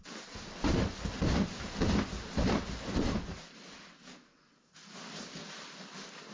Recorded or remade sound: recorded